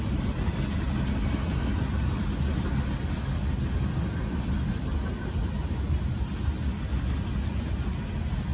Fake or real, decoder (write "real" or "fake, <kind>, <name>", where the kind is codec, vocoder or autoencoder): real